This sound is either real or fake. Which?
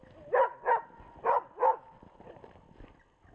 real